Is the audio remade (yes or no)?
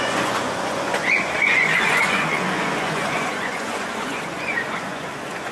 yes